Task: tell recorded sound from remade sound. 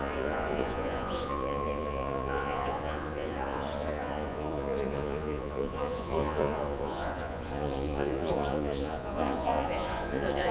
remade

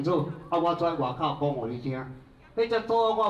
recorded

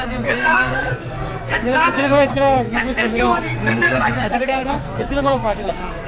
remade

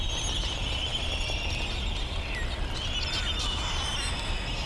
recorded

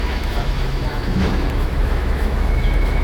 remade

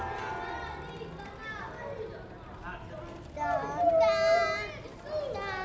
recorded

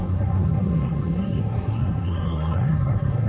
remade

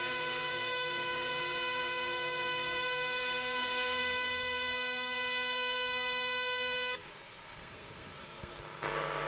remade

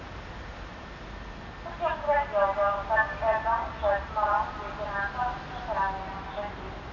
recorded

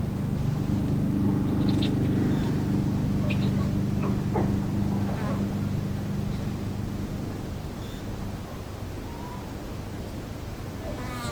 recorded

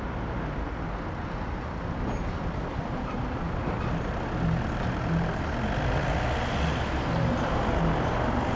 recorded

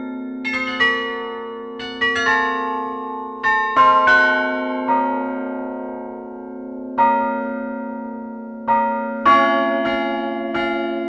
recorded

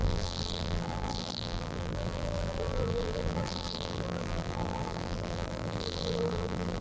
remade